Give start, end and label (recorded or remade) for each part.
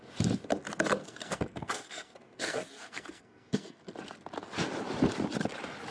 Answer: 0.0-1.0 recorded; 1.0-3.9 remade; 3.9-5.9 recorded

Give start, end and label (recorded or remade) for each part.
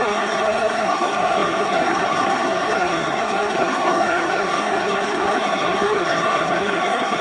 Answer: 0.0-7.2 remade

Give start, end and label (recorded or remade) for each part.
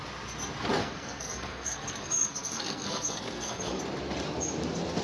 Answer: 0.0-0.8 recorded; 0.8-3.8 remade; 3.8-5.0 recorded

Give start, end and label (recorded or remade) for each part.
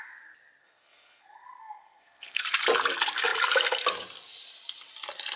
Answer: 0.0-0.6 recorded; 0.6-2.4 remade; 2.4-5.4 recorded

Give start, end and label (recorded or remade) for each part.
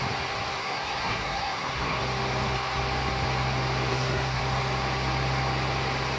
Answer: 0.0-0.6 recorded; 0.6-2.0 remade; 2.0-3.9 recorded; 3.9-4.4 remade; 4.4-6.2 recorded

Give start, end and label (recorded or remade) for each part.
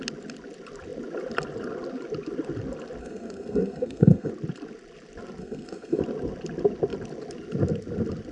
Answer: 0.0-3.0 recorded; 3.0-4.3 remade; 4.3-5.4 recorded; 5.4-6.0 remade; 6.0-8.3 recorded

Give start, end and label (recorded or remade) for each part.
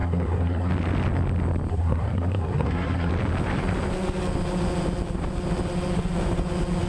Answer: 0.0-0.7 remade; 0.7-1.7 recorded; 1.7-3.1 remade; 3.1-6.9 recorded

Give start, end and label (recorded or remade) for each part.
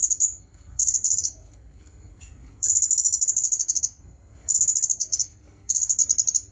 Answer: 0.0-6.0 remade; 6.0-6.5 recorded